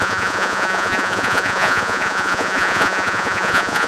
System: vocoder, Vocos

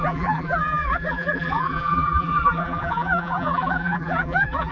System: vocoder, BigVGAN v2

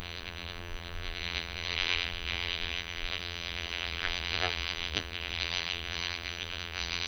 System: vocoder, BigVGAN v2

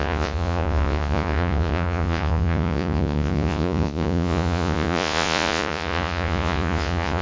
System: vocoder, Vocos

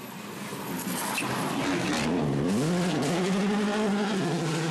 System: none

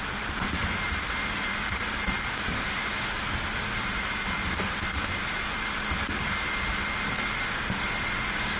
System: vocoder, BigVGAN v2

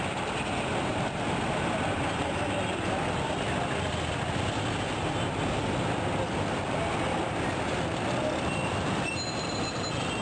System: none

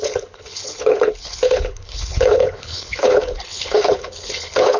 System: codec, HILCodec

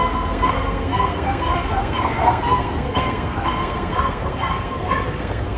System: codec, SNAC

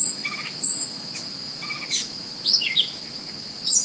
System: autoencoder, DAC-VAE